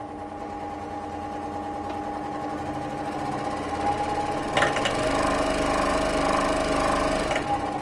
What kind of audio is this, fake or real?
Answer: real